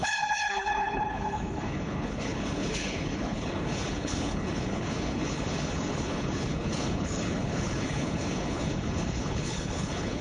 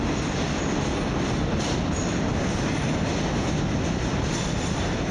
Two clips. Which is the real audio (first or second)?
second